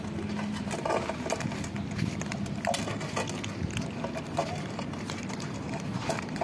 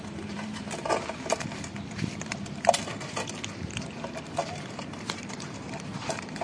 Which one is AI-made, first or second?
second